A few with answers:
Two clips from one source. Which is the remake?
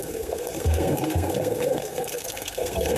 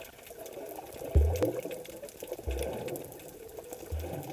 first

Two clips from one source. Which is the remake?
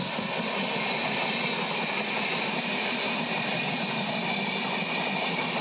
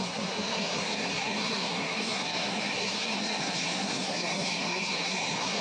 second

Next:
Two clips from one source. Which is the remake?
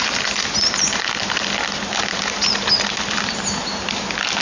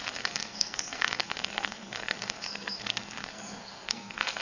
second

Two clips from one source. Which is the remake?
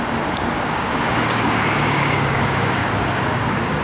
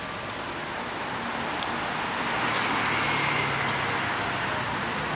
first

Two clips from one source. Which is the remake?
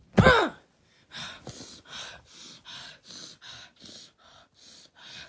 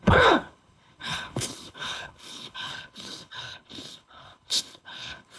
second